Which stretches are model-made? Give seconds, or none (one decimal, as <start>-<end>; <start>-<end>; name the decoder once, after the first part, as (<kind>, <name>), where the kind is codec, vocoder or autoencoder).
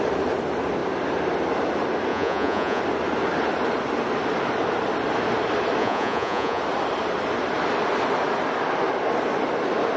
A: 2.1-2.8 (vocoder, Vocos); 5.8-6.6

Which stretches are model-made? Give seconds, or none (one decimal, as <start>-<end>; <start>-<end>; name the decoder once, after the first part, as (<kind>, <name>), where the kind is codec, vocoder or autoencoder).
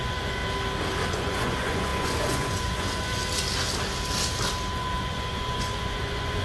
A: 0.0-0.4 (vocoder, Vocos); 1.1-3.2; 4.7-6.4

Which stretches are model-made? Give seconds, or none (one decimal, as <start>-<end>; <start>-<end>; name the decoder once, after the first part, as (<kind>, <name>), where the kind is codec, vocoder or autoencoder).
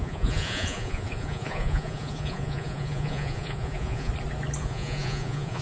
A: 0.0-4.1 (vocoder, Vocos); 4.6-5.6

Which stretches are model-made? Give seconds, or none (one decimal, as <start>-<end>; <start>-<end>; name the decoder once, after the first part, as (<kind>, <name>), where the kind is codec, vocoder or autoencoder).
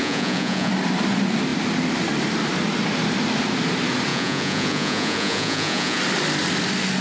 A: 0.0-0.7 (vocoder, Vocos); 4.1-6.0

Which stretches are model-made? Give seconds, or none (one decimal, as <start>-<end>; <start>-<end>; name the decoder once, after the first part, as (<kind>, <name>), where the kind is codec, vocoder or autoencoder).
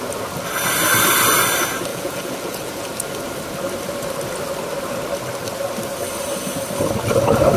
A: 1.9-2.9 (vocoder, Vocos)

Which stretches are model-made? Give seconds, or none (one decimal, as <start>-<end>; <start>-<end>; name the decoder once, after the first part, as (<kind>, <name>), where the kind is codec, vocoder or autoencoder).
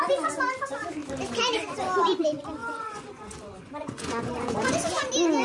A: 2.6-4.7 (vocoder, Vocos)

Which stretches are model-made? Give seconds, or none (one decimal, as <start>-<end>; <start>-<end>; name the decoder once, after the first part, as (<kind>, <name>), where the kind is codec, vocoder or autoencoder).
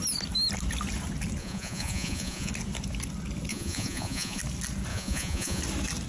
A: 1.4-2.5 (vocoder, Vocos); 3.5-4.4; 4.9-5.6